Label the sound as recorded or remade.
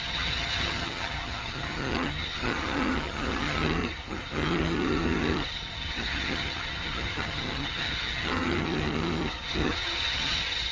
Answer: remade